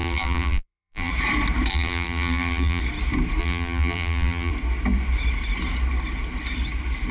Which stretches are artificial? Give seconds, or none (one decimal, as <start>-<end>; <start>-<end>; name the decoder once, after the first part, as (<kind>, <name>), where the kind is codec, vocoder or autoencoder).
0.0-1.1 (vocoder, BigVGAN v2); 1.7-2.8; 3.4-4.5